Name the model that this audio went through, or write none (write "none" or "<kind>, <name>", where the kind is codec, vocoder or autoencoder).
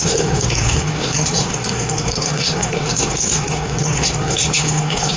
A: codec, SNAC